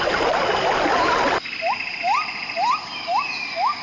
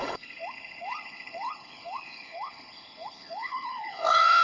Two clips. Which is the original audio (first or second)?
first